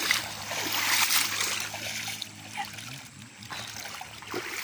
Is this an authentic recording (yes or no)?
yes